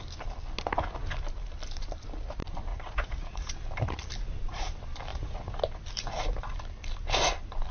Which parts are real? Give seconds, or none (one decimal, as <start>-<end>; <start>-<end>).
0.0-2.7; 3.5-5.1; 5.6-7.7